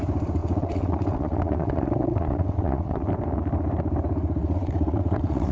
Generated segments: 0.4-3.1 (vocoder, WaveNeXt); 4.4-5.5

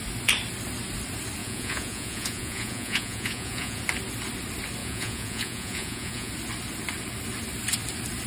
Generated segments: 1.4-3.8 (vocoder, Vocos); 4.8-6.3

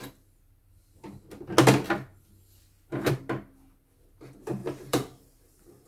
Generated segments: 4.6-5.9 (vocoder, BigVGAN v2)

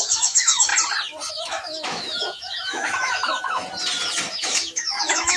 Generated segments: 0.0-0.7 (autoencoder, DAC-VAE); 1.3-3.6; 4.3-5.4

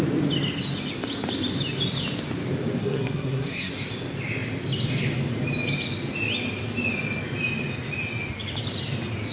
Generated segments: 2.8-3.7 (codec, SNAC)